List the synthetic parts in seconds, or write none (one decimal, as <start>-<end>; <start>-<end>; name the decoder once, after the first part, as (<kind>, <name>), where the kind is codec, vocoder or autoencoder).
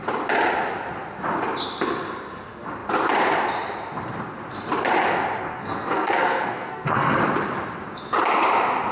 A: 5.4-7.2 (codec, SNAC)